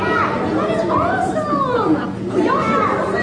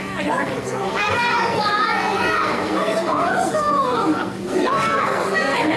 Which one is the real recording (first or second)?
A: first